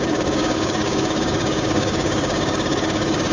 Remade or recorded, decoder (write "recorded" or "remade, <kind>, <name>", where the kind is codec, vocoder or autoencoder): remade, codec, DAC